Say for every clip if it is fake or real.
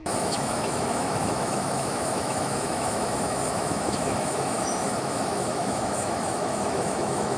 fake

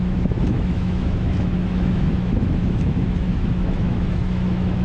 fake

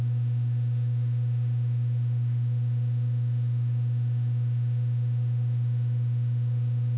fake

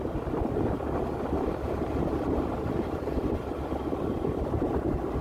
real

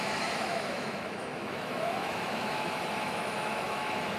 fake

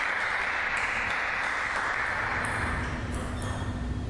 real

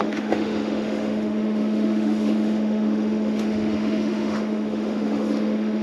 fake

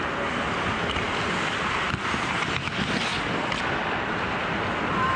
real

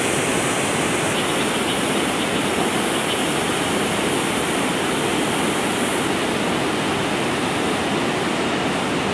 real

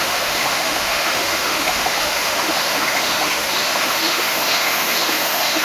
fake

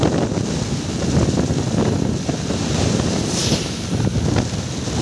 real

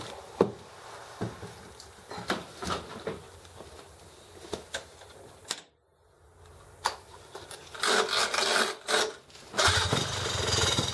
real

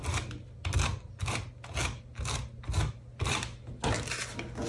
real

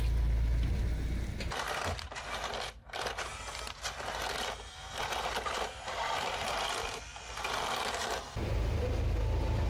real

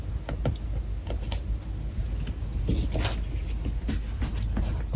real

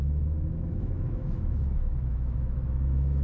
fake